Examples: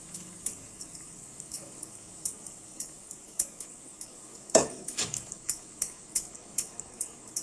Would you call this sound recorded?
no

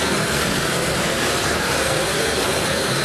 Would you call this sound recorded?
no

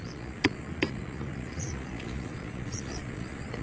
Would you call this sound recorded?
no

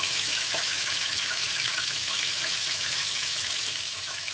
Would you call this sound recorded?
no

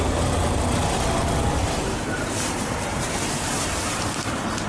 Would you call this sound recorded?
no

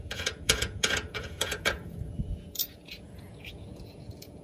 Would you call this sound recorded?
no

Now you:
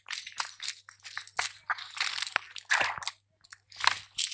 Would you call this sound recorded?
yes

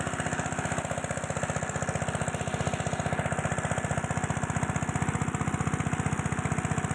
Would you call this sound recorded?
yes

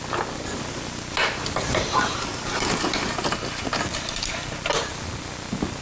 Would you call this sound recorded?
yes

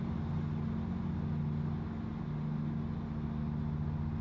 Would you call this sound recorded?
yes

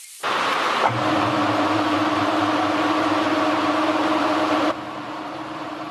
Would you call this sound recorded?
no